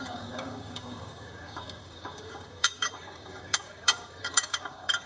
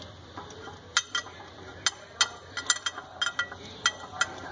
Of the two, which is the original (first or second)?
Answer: second